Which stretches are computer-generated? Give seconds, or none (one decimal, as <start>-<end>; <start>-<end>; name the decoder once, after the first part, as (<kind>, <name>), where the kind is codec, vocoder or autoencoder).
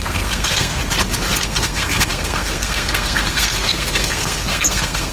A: 0.0-0.8 (codec, SNAC); 1.4-5.1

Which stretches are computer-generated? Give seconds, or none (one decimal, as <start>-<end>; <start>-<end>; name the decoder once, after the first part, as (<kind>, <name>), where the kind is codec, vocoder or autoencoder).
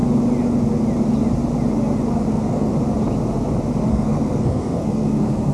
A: 2.3-2.7 (codec, SNAC); 3.9-5.5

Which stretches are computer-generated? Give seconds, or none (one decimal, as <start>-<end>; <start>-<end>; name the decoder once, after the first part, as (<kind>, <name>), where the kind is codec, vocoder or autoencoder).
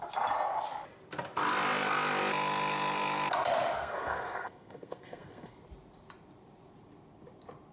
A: 3.8-5.6 (codec, SNAC)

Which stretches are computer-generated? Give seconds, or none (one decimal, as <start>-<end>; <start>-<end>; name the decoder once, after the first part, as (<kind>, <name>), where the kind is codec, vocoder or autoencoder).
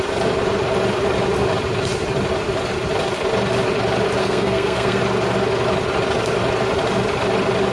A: 4.2-5.0 (codec, SNAC)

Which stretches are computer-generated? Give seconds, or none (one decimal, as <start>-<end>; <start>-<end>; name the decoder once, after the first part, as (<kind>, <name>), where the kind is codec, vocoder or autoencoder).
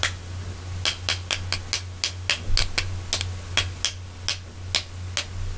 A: none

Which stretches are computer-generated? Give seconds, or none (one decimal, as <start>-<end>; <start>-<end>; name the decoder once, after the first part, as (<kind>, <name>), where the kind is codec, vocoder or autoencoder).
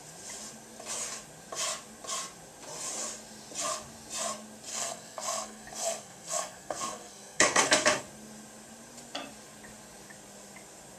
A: 4.7-8.0 (codec, SNAC)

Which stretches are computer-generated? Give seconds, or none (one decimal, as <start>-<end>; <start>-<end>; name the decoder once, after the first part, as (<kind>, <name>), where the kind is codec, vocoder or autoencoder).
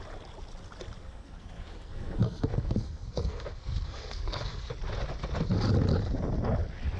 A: 1.0-4.7 (codec, SNAC)